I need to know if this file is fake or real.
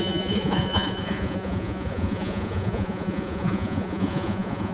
fake